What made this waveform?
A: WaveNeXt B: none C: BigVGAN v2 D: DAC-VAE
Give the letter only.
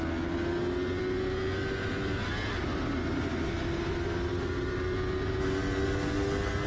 B